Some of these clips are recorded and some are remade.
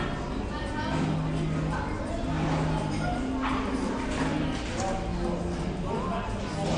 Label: recorded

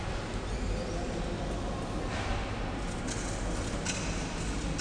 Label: recorded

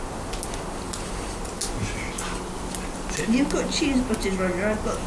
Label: recorded